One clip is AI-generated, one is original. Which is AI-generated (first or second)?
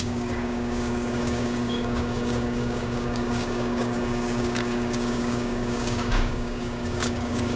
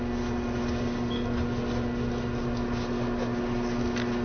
first